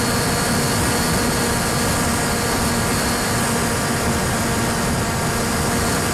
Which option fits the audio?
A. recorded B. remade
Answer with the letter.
A